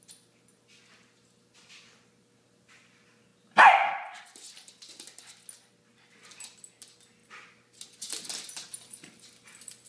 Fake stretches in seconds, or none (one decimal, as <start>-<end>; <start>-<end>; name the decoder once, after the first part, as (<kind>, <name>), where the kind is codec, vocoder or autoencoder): none